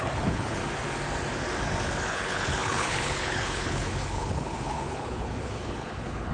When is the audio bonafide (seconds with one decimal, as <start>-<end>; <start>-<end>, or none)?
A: 0.6-2.1